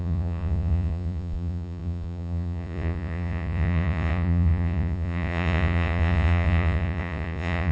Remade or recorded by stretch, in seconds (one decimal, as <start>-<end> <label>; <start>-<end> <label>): 0.0-7.7 remade